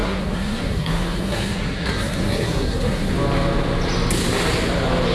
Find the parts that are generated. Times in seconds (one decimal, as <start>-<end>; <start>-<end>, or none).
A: 0.0-3.1